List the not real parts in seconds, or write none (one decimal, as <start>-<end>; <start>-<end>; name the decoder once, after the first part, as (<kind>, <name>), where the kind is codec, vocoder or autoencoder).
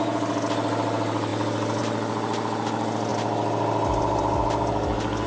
none